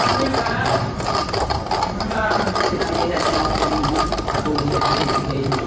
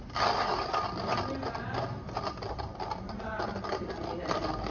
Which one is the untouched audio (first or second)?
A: second